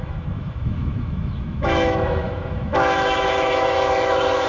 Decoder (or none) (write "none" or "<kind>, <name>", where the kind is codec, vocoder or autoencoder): autoencoder, DAC-VAE